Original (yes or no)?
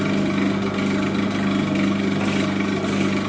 yes